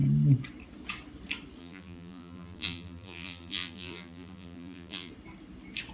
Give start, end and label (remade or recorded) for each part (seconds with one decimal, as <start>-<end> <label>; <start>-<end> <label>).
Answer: 0.0-1.6 recorded; 1.6-5.1 remade; 5.1-5.9 recorded